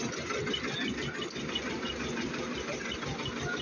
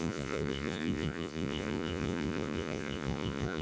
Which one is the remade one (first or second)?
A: second